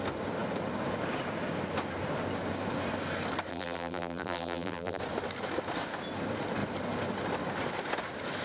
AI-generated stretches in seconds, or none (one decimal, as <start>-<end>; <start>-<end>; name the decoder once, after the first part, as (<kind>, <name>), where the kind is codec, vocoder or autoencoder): 3.5-5.0 (vocoder, BigVGAN v2)